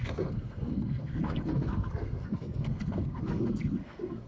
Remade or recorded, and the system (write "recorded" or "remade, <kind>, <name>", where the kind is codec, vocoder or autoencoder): remade, codec, SNAC